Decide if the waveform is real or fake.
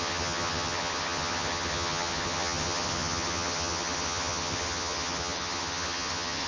fake